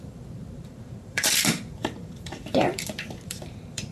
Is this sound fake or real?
fake